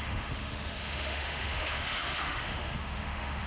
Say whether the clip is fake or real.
fake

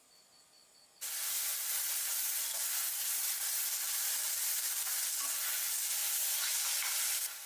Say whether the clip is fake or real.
real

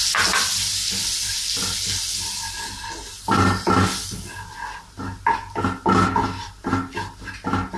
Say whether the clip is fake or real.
real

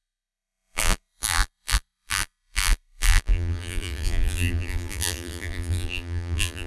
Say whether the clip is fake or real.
fake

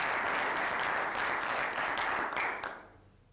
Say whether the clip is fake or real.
real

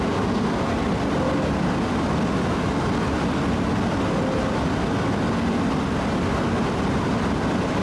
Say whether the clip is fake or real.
real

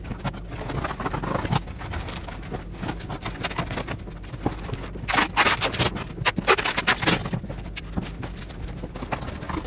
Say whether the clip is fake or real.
real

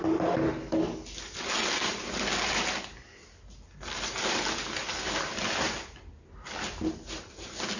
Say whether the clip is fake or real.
real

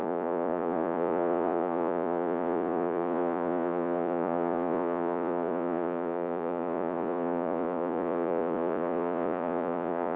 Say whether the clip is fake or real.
fake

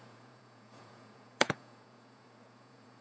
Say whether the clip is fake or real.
fake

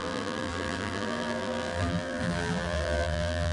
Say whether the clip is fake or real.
fake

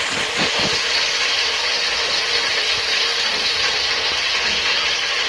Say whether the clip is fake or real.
real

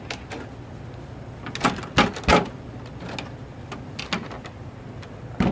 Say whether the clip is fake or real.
real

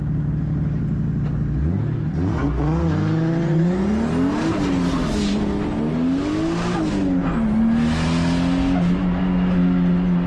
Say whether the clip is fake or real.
real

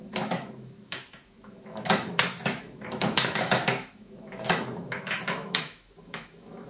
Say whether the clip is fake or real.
fake